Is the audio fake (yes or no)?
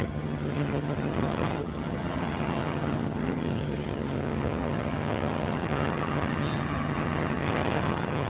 yes